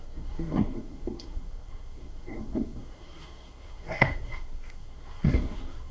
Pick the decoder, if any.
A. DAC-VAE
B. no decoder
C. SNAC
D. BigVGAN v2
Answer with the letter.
C